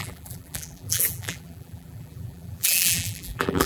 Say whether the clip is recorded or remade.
remade